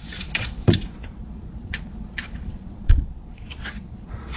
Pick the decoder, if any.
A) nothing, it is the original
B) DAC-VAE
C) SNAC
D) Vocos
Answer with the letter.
D